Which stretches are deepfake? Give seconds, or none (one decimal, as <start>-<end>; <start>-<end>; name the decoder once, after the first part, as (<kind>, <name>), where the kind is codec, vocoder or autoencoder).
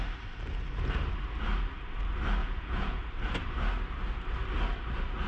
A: 2.4-3.0 (vocoder, Vocos)